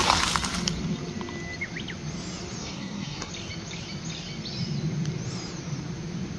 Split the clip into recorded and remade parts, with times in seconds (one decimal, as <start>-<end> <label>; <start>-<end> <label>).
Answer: 0.0-2.6 recorded; 2.6-3.3 remade; 3.3-6.4 recorded